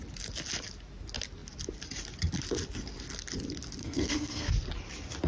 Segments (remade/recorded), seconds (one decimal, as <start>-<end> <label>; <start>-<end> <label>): 0.0-3.8 recorded; 3.8-4.5 remade; 4.5-5.3 recorded